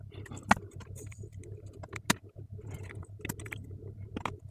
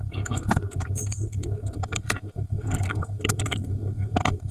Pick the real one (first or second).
first